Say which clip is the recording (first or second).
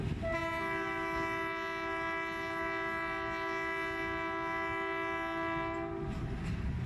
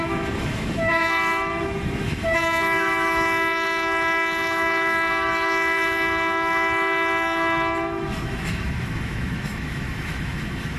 first